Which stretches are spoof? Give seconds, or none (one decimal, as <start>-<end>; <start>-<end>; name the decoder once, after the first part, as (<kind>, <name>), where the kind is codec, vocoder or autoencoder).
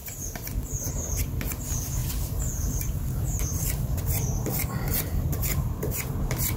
0.0-0.9 (vocoder, BigVGAN v2); 2.0-6.0